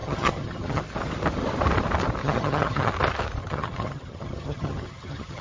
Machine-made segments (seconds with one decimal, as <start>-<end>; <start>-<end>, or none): 0.0-0.8; 2.2-2.9; 3.4-5.4

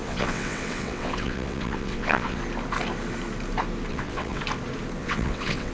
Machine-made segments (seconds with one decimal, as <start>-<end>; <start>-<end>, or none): 0.0-2.4; 3.9-4.4; 5.0-5.7

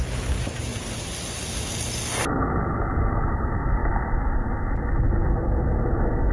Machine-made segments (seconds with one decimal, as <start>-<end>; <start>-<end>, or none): none

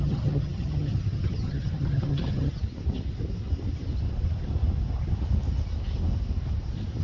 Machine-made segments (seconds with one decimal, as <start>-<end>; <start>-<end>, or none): 0.0-2.6

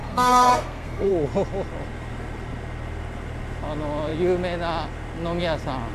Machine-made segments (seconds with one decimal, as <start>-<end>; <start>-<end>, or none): 0.0-1.1